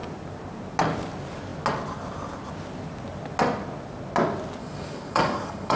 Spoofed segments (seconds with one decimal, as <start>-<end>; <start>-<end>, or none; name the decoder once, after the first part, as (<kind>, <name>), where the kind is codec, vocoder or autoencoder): 4.6-5.8 (codec, DAC)